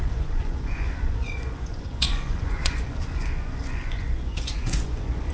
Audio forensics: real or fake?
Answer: fake